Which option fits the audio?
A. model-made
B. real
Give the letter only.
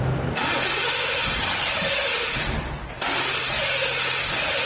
B